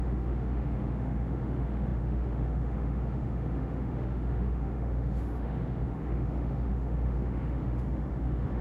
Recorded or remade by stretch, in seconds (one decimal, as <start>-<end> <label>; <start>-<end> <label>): 0.0-8.6 remade